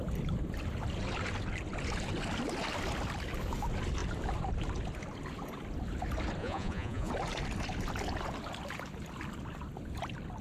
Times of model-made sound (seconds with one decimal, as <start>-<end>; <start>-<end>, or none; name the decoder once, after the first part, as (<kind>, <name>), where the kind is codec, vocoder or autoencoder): 6.4-7.1 (vocoder, Vocos)